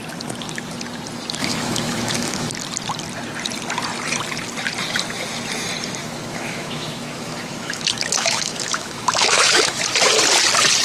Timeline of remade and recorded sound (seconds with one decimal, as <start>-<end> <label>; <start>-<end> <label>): 0.0-1.4 recorded; 1.4-2.5 remade; 2.5-6.0 recorded; 6.0-9.8 remade; 9.8-10.8 recorded